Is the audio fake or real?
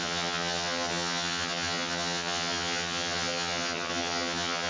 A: fake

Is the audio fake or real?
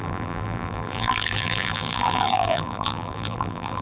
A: fake